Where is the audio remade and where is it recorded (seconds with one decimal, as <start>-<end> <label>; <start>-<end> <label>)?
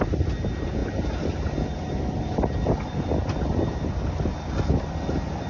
0.0-5.5 recorded